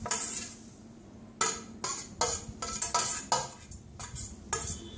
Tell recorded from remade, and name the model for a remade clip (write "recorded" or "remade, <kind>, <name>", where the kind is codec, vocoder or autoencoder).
recorded